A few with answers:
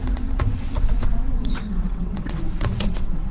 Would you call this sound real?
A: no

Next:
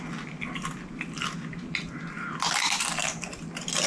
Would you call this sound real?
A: yes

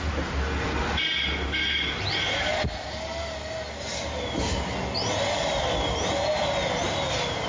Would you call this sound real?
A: yes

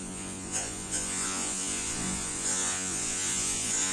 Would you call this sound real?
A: no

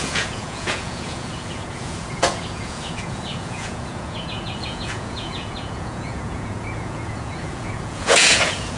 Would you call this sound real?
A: no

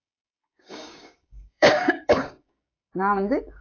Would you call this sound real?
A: no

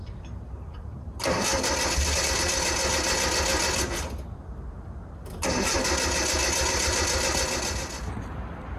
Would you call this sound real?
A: yes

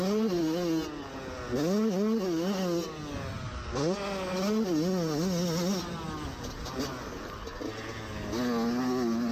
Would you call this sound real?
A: yes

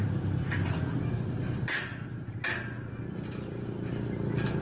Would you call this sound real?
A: yes